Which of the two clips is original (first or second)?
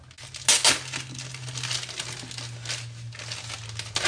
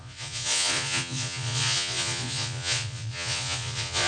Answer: first